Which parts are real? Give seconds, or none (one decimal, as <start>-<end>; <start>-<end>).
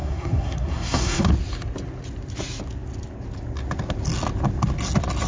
1.3-5.3